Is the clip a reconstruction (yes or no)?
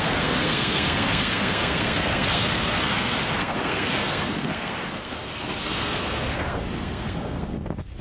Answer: yes